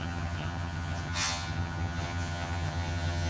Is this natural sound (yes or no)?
no